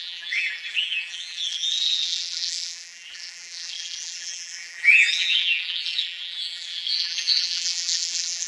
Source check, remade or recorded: remade